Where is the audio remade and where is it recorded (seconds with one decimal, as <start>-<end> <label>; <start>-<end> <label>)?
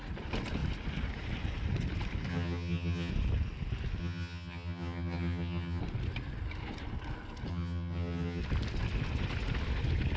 0.0-2.3 recorded; 2.3-3.1 remade; 3.1-4.0 recorded; 4.0-5.8 remade; 5.8-7.5 recorded; 7.5-8.4 remade; 8.4-10.2 recorded